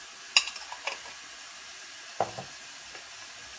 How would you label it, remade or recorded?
recorded